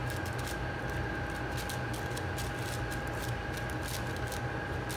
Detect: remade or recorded recorded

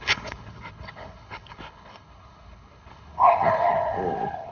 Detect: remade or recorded remade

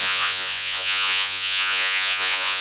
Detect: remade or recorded remade